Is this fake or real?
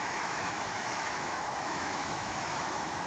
fake